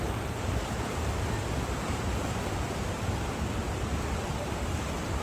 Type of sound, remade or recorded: remade